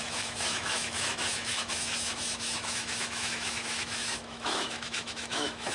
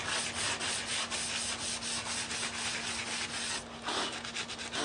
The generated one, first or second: first